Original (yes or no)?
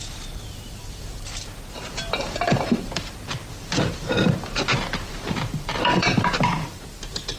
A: no